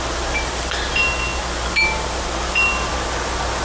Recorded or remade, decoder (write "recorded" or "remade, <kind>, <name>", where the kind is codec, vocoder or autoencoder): recorded